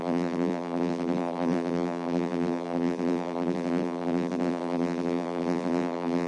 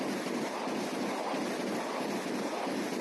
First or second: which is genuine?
second